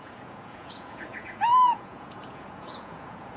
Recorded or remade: remade